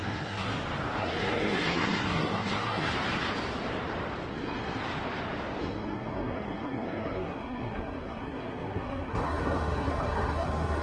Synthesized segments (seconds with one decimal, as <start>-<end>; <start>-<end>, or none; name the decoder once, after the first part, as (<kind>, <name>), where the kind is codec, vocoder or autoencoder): 0.0-0.5 (codec, SNAC); 1.0-2.9; 4.3-4.8; 5.6-10.8